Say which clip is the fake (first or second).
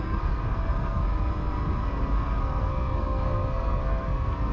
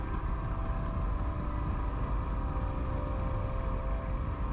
first